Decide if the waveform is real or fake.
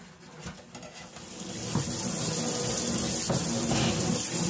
real